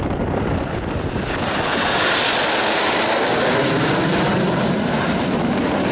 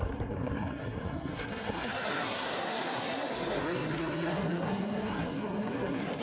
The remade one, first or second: second